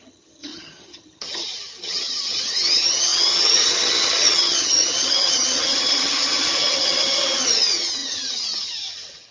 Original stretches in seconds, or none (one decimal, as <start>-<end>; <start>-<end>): none